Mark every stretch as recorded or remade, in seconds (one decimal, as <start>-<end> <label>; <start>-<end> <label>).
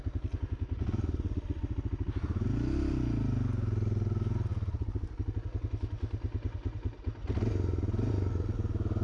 0.0-9.0 recorded